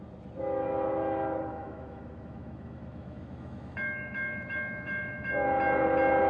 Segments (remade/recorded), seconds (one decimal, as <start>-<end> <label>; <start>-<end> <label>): 0.0-1.5 recorded; 1.5-5.3 remade; 5.3-6.3 recorded